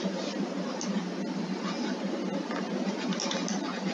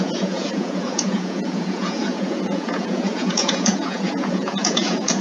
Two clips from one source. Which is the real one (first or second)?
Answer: first